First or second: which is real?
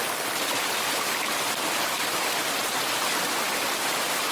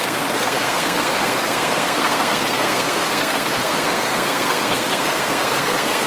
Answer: first